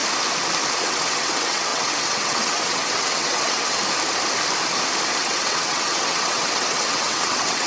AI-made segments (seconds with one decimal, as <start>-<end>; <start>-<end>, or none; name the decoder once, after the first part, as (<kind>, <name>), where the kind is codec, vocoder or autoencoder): 0.8-3.8 (vocoder, WaveNeXt); 5.2-7.7